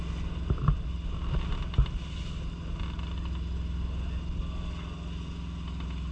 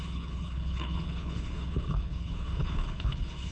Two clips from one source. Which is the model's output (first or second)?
second